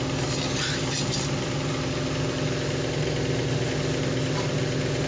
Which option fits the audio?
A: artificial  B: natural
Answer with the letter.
B